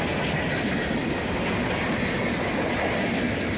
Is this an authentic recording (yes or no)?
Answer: yes